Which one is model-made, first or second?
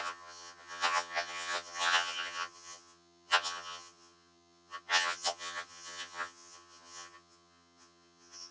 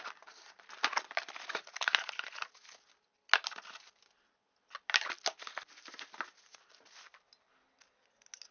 first